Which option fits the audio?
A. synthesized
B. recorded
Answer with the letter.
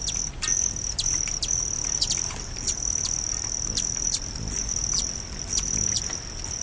B